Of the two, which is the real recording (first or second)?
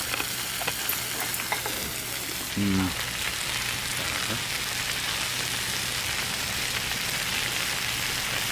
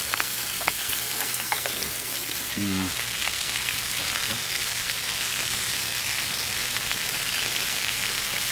first